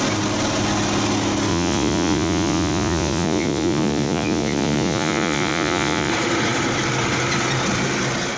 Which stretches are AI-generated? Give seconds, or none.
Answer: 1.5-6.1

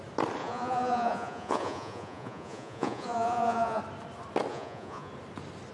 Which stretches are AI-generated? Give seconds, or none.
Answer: 0.4-3.8; 4.5-5.1

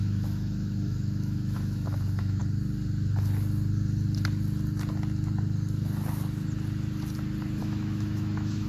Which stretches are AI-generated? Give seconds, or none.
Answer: 0.0-2.4; 7.6-8.7